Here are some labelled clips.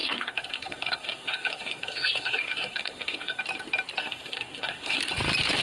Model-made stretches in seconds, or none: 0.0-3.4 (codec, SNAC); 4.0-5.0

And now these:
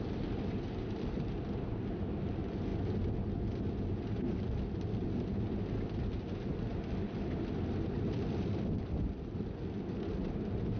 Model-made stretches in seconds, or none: 6.7-9.0 (vocoder, BigVGAN v2)

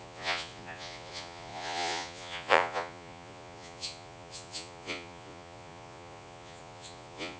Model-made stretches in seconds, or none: 0.0-7.4 (vocoder, Vocos)

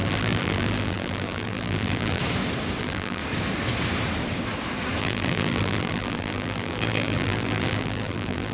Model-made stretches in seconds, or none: 0.0-2.2 (vocoder, BigVGAN v2); 2.8-3.2; 5.0-8.5

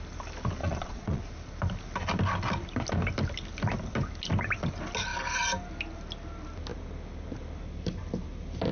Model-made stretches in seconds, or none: 0.6-1.2 (vocoder, Vocos)